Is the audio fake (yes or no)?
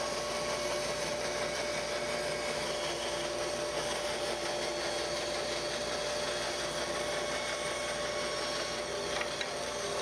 no